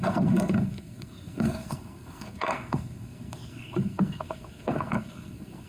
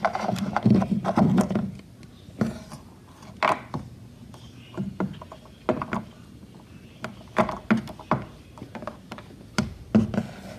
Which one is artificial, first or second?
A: first